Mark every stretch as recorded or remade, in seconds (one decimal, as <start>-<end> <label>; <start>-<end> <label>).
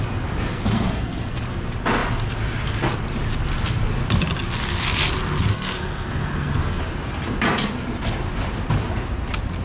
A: 0.0-0.5 recorded; 0.5-1.4 remade; 1.4-5.5 recorded; 5.5-6.8 remade; 6.8-9.6 recorded